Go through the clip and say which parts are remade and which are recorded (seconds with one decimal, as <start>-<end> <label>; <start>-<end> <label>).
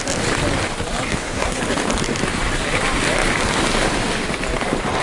0.0-1.1 recorded; 1.1-1.6 remade; 1.6-5.0 recorded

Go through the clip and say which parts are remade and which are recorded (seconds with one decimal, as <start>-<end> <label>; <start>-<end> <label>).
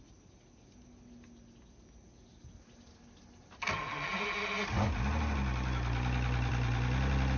0.0-7.4 recorded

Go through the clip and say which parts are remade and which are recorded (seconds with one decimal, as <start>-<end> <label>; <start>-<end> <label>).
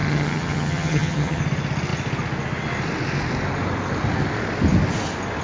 0.0-1.4 remade; 1.4-5.4 recorded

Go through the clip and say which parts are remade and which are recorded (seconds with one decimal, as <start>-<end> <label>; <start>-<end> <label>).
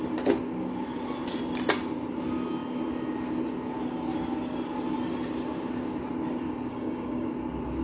0.0-6.7 recorded; 6.7-7.3 remade; 7.3-7.8 recorded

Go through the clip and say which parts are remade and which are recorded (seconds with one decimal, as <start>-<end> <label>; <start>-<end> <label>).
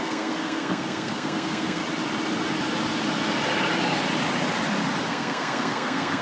0.0-1.8 remade; 1.8-5.1 recorded; 5.1-6.2 remade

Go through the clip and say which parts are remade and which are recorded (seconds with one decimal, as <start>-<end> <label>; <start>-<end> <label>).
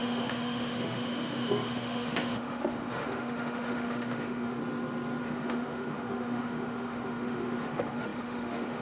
0.0-4.6 remade; 4.6-5.2 recorded; 5.2-8.8 remade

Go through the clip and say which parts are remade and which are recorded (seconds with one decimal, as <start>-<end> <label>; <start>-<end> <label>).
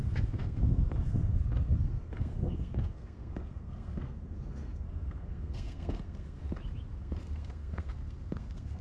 0.0-6.4 remade; 6.4-7.0 recorded; 7.0-8.8 remade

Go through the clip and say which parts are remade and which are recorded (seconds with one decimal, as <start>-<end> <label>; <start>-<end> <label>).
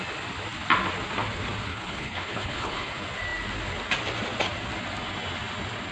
0.0-1.7 recorded; 1.7-2.9 remade; 2.9-5.9 recorded